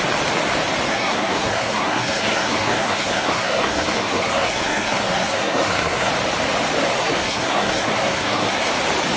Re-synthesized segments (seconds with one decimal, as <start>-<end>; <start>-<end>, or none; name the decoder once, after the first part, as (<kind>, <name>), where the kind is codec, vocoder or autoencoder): 0.9-6.1 (codec, SNAC); 7.0-8.7